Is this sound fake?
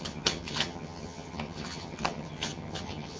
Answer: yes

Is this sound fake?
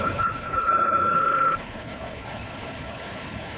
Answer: yes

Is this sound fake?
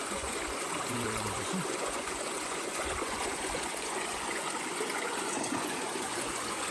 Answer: yes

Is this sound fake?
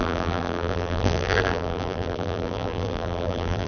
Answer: yes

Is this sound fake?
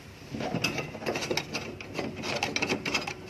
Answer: no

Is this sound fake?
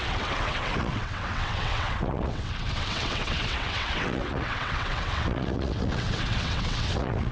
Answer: yes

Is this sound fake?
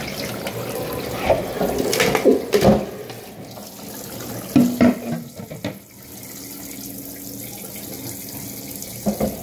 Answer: no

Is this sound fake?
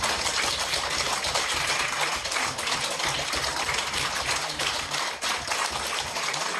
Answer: no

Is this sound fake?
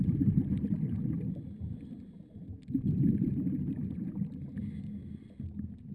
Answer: no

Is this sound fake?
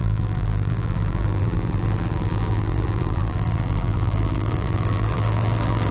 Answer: yes